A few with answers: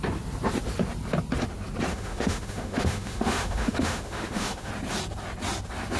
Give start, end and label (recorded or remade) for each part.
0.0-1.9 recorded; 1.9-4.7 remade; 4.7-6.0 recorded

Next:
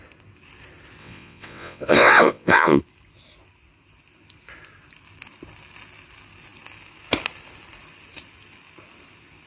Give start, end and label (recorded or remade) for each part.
0.0-1.0 recorded; 1.0-2.8 remade; 2.8-9.5 recorded

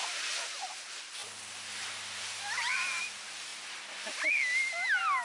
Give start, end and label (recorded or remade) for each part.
0.0-1.2 remade; 1.2-3.0 recorded; 3.0-3.5 remade; 3.5-4.6 recorded; 4.6-5.2 remade

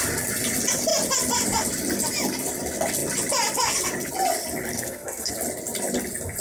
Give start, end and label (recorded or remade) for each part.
0.0-4.7 recorded; 4.7-5.3 remade; 5.3-6.4 recorded

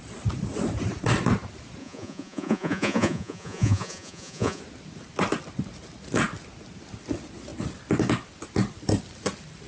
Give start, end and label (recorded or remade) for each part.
0.0-1.8 recorded; 1.8-4.6 remade; 4.6-9.7 recorded

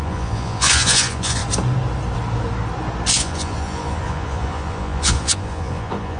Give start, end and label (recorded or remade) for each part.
0.0-1.4 remade; 1.4-3.1 recorded; 3.1-6.2 remade